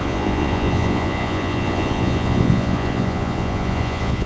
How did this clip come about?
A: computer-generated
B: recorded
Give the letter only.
A